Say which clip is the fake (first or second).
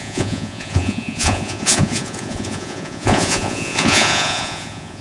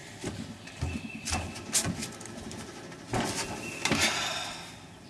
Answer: first